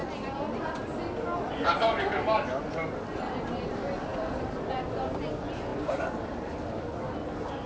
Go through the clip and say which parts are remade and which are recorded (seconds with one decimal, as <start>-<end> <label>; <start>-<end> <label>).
0.0-4.1 recorded; 4.1-5.0 remade; 5.0-5.7 recorded; 5.7-6.8 remade; 6.8-7.7 recorded